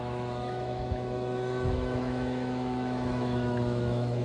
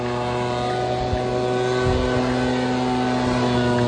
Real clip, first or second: second